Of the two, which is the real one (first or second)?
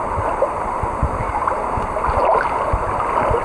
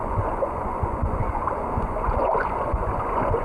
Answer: first